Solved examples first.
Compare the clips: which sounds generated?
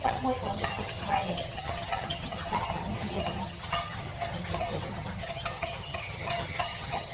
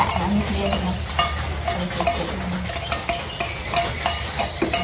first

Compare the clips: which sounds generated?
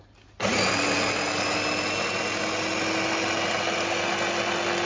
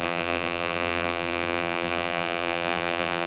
second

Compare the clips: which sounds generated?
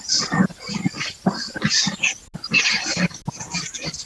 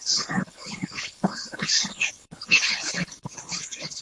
second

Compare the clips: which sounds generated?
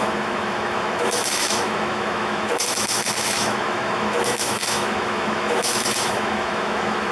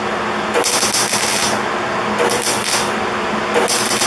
first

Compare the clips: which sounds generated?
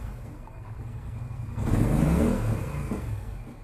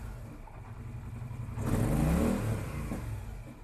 first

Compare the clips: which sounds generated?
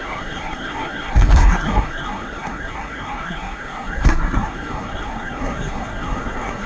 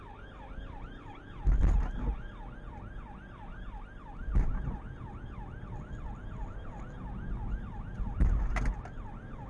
first